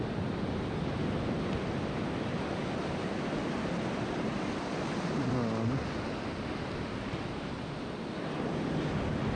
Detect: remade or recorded recorded